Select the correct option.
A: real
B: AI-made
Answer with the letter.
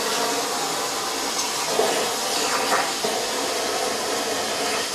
A